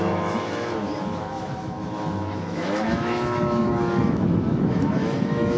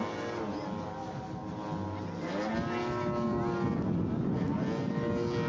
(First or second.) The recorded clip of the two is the second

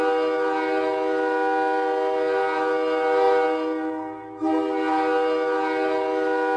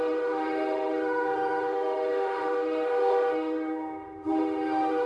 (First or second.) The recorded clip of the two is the first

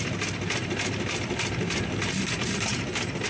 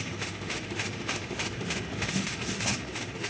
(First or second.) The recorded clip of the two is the first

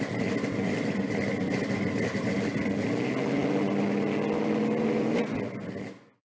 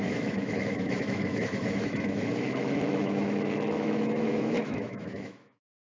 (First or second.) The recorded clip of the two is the first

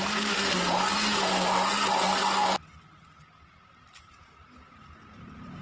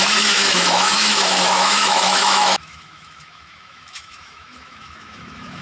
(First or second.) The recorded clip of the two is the first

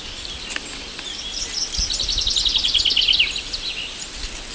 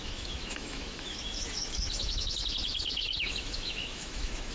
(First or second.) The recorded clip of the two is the first